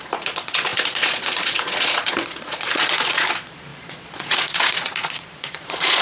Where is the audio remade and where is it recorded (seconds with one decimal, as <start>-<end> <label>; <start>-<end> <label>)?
0.0-6.0 remade